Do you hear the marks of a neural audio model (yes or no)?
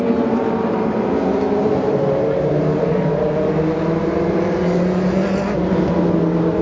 no